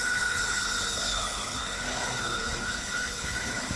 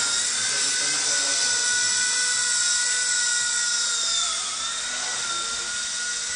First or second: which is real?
second